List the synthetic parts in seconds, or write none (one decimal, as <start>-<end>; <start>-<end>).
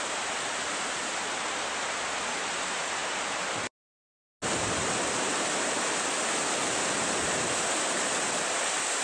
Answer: none